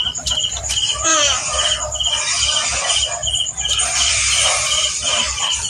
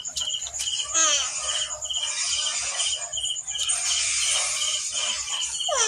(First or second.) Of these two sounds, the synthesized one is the first